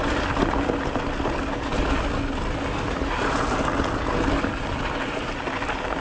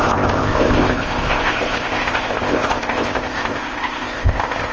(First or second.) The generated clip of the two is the second